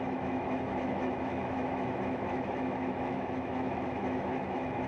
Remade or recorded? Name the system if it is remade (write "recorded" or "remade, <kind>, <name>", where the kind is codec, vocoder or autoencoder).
remade, autoencoder, DAC-VAE